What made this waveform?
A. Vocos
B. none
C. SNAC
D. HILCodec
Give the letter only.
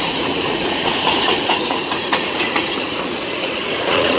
A